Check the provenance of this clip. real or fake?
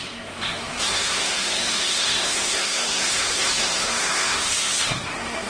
fake